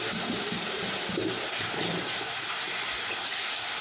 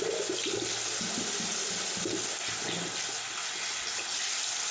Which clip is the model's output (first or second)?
first